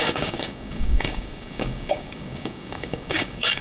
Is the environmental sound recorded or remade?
remade